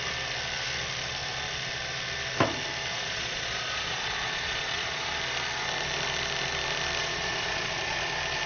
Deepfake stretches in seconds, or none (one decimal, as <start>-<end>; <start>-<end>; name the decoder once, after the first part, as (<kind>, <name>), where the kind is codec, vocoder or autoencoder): 2.9-5.1 (vocoder, Vocos); 7.0-8.1